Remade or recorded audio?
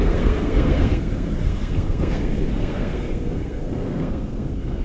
remade